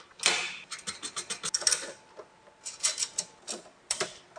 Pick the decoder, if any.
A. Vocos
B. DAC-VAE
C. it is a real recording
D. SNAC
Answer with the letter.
C